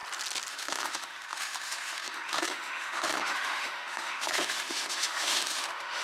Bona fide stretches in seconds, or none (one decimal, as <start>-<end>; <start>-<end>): 0.0-0.5